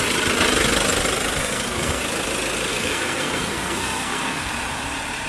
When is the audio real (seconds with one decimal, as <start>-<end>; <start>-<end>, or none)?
0.0-1.4; 2.0-2.7; 4.5-5.3